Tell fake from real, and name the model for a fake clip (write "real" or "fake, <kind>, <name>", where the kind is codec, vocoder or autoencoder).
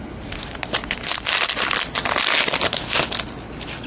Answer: real